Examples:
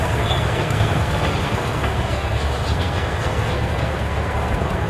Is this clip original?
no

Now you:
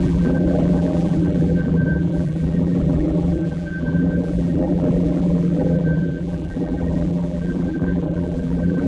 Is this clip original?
no